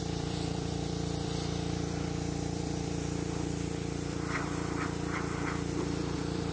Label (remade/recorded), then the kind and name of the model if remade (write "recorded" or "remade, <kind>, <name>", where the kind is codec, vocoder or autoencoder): remade, vocoder, BigVGAN v2